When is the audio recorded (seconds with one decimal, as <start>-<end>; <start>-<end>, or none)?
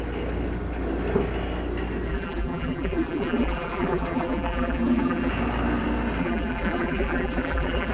0.0-2.1; 5.3-6.2